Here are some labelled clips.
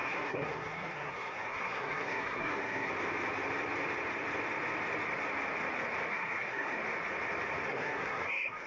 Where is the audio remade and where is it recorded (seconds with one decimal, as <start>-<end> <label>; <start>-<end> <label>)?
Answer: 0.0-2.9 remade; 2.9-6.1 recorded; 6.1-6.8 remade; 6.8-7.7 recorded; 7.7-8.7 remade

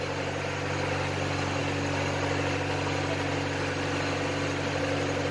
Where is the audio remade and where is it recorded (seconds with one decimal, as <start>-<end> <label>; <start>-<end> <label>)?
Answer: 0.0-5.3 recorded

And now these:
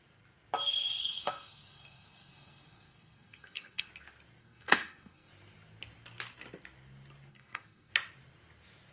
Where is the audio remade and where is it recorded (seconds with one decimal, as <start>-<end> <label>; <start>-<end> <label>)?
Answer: 0.0-1.0 recorded; 1.0-3.9 remade; 3.9-4.4 recorded; 4.4-5.3 remade; 5.3-7.3 recorded; 7.3-7.9 remade; 7.9-8.9 recorded

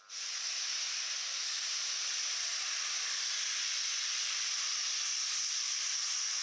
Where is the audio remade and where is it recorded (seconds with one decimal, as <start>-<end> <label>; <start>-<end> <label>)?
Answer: 0.0-6.4 recorded